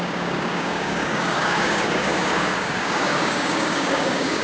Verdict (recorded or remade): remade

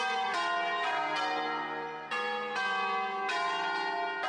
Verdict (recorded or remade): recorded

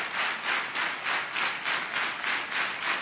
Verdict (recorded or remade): recorded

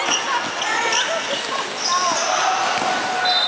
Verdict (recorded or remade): recorded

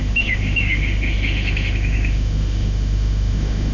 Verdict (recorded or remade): remade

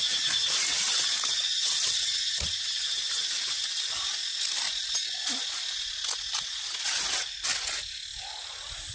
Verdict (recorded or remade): recorded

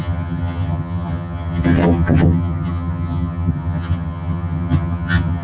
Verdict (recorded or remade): remade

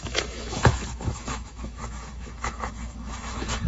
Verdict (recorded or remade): remade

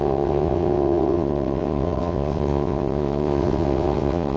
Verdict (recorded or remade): remade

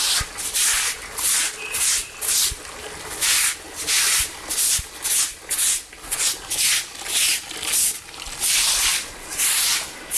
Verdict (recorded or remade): recorded